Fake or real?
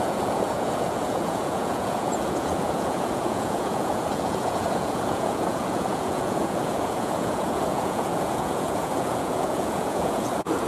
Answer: fake